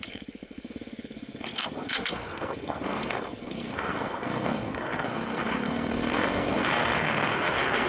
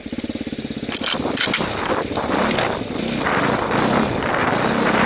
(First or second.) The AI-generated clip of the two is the first